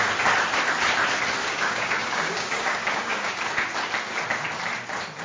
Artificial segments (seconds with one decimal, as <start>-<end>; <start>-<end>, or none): 1.4-3.4